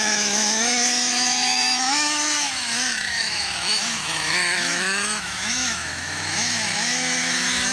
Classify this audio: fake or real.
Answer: fake